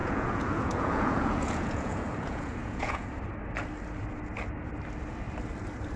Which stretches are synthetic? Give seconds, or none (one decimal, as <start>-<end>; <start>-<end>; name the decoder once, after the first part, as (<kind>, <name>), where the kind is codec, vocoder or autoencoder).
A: 0.0-3.1 (vocoder, Vocos)